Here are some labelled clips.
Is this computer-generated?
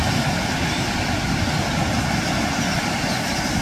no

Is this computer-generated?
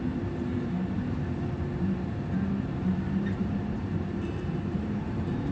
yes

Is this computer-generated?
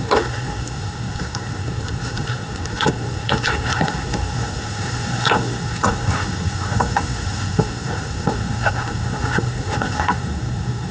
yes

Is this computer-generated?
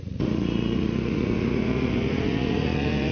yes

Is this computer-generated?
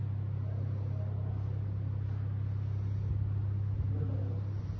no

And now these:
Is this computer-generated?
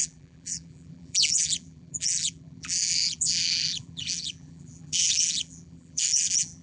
yes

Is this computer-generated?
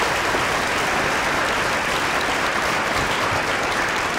no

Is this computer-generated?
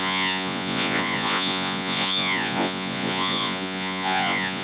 yes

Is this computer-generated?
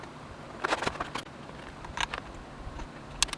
no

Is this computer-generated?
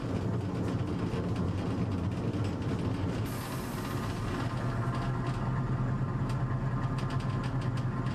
no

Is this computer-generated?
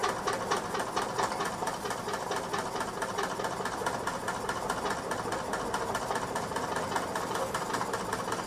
no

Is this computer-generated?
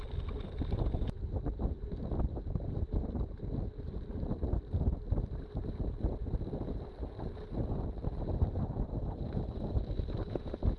no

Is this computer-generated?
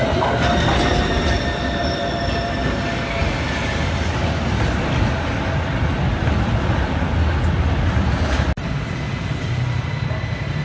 no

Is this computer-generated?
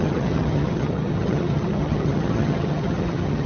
yes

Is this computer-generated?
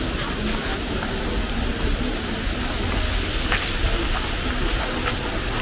no